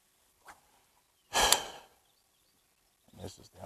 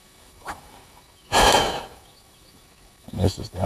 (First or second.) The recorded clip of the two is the first